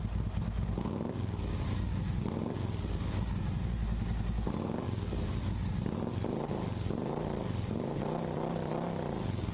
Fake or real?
real